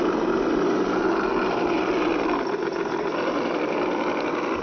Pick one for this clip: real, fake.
real